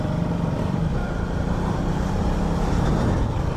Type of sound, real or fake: real